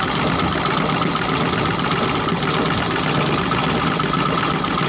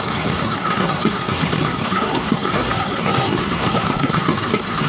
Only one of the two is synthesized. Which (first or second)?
second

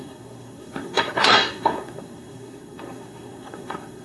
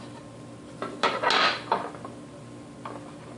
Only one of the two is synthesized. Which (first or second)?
first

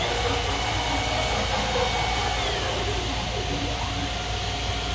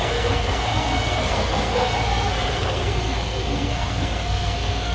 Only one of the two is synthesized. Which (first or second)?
second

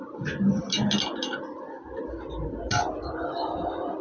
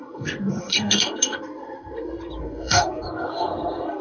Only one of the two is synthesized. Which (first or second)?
second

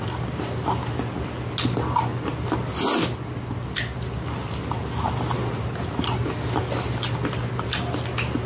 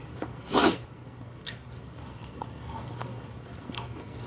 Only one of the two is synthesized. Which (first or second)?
second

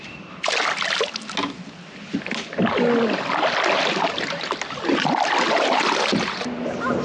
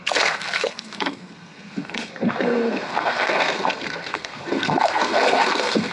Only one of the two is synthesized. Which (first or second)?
second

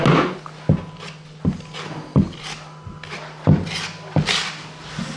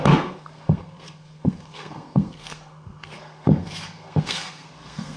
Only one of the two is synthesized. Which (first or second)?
second